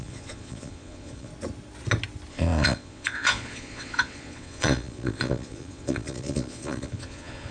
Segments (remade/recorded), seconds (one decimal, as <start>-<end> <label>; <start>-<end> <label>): 0.0-1.3 remade; 1.3-2.3 recorded; 2.3-7.5 remade